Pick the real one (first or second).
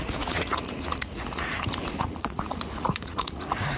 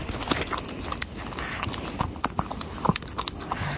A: second